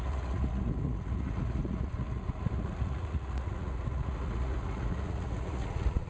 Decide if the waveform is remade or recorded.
remade